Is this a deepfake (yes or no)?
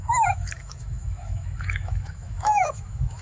yes